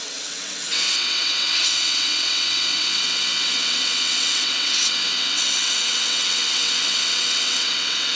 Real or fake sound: fake